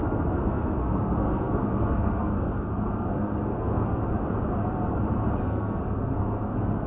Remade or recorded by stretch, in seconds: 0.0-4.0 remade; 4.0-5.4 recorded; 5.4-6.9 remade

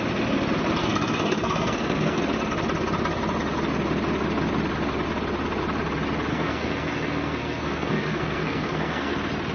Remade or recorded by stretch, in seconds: 0.0-0.8 recorded; 0.8-2.2 remade; 2.2-6.3 recorded; 6.3-9.1 remade; 9.1-9.5 recorded

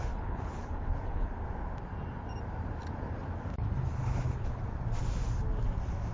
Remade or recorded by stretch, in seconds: 0.0-1.3 remade; 1.3-3.5 recorded; 3.5-4.6 remade; 4.6-6.1 recorded

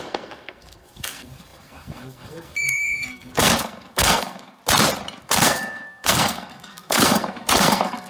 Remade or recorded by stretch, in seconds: 0.0-4.6 remade; 4.6-5.2 recorded; 5.2-8.1 remade